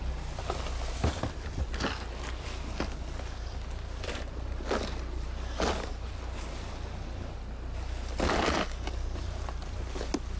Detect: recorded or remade recorded